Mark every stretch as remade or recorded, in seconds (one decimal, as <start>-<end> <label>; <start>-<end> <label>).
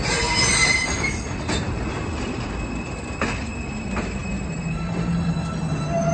0.0-6.1 recorded